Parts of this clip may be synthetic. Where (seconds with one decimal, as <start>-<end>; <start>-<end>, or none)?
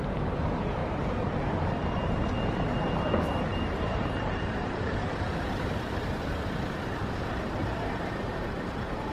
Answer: 3.5-6.3; 7.0-9.1